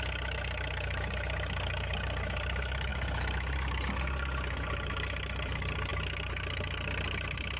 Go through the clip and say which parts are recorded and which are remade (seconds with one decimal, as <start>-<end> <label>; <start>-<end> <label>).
0.0-7.6 recorded